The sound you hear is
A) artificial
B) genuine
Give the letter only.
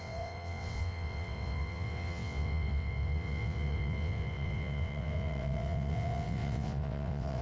A